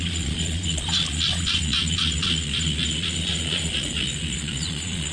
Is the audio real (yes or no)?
no